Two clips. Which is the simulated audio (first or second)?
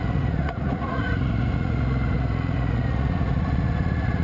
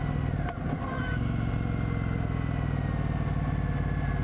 first